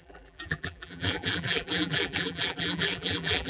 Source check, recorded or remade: remade